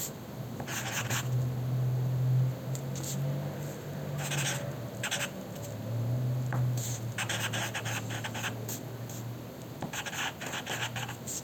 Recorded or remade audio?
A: recorded